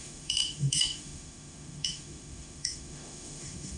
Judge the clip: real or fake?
fake